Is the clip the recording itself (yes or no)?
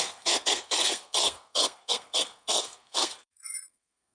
no